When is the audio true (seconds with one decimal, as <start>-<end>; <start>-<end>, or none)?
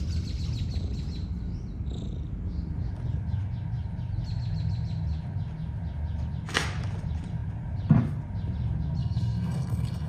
0.0-9.0